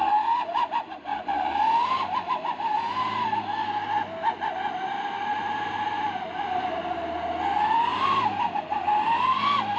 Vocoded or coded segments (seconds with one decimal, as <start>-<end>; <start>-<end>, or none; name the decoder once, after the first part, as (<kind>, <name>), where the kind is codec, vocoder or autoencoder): 1.1-1.6 (vocoder, BigVGAN v2); 5.3-6.8; 7.9-8.6